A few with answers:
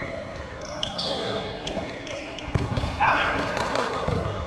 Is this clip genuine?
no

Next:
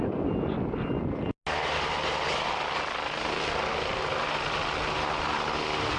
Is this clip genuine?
yes